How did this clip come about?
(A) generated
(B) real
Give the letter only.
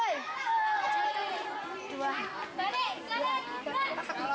B